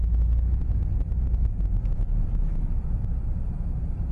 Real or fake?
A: real